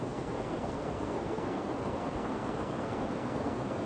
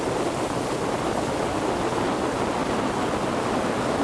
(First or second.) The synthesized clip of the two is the first